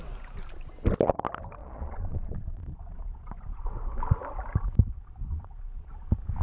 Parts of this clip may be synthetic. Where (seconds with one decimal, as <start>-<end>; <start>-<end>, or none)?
1.6-3.9; 5.3-5.9